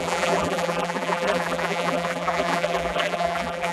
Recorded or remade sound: remade